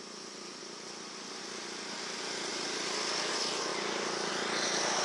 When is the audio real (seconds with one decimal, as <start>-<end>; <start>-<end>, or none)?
0.0-0.6; 1.4-2.5; 3.3-3.7; 4.3-5.0

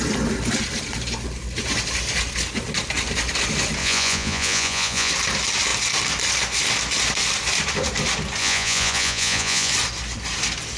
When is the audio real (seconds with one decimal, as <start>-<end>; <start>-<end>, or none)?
0.0-3.8; 5.1-8.4; 9.7-10.8

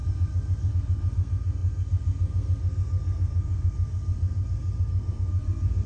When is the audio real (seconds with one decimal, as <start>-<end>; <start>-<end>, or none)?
none